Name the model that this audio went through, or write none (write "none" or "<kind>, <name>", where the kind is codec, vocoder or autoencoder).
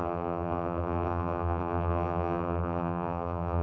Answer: vocoder, BigVGAN v2